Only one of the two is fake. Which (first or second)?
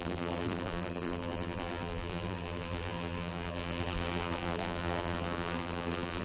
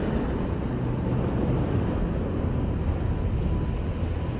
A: first